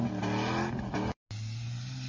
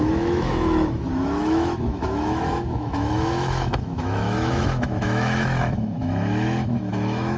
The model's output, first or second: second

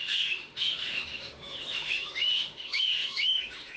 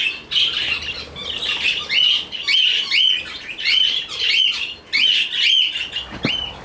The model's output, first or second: first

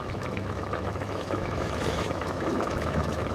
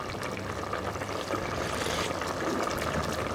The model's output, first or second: first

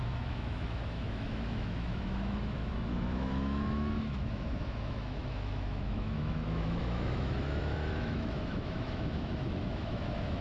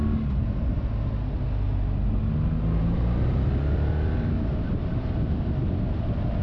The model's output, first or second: first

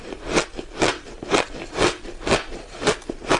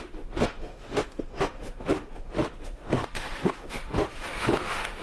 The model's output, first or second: second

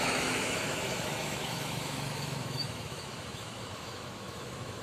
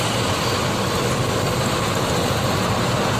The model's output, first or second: first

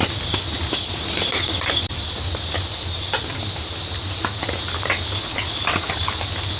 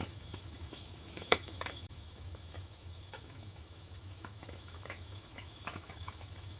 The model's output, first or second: second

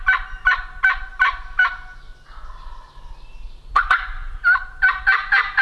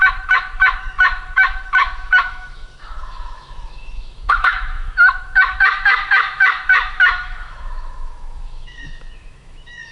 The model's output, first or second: second